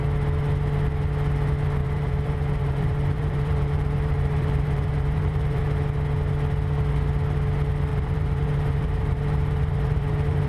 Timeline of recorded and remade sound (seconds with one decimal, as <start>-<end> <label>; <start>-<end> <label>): 0.0-1.8 recorded; 1.8-5.6 remade; 5.6-7.9 recorded; 7.9-10.5 remade